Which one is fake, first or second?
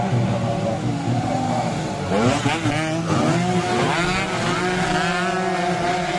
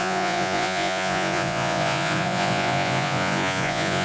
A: second